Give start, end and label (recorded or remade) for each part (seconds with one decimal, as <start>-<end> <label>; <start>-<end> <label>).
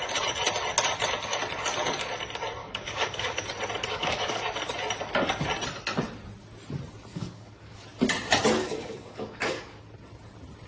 0.0-2.6 recorded; 2.6-3.4 remade; 3.4-3.9 recorded; 3.9-4.4 remade; 4.4-7.1 recorded; 7.1-7.8 remade; 7.8-8.6 recorded; 8.6-9.8 remade; 9.8-10.7 recorded